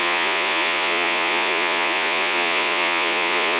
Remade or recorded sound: remade